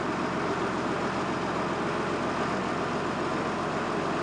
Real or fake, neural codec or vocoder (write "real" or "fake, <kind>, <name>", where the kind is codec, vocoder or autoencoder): real